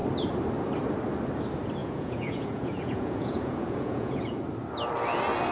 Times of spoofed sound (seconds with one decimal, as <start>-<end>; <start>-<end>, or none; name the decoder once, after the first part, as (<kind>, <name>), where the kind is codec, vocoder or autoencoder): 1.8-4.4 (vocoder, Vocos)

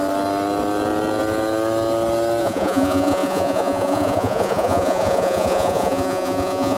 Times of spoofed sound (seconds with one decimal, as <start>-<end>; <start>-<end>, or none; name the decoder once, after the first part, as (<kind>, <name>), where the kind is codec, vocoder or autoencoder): 2.4-6.8 (vocoder, Vocos)

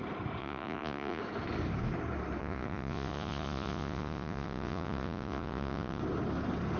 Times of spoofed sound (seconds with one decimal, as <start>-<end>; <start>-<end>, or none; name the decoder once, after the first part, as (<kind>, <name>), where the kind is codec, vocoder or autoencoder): 0.4-1.2 (vocoder, Vocos); 2.4-6.0

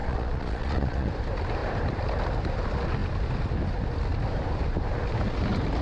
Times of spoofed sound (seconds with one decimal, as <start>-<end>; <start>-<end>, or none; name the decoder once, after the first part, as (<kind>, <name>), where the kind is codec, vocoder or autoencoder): 0.0-1.1 (vocoder, Vocos)

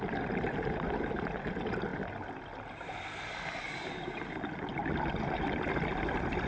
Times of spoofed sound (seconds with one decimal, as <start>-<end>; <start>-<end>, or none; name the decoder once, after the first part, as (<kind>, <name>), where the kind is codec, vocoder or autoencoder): none